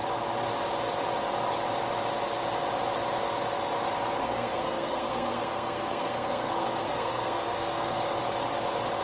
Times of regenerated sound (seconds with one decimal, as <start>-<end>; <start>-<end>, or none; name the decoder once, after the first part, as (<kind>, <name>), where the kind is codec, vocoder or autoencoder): 4.2-8.2 (codec, SNAC)